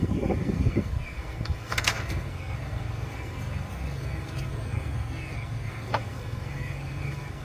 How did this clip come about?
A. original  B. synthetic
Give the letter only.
B